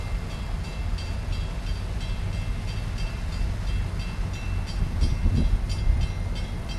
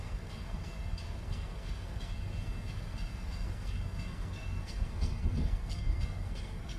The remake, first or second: second